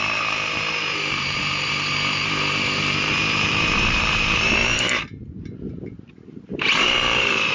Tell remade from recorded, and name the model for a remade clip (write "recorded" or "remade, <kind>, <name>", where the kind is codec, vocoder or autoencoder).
remade, vocoder, BigVGAN v2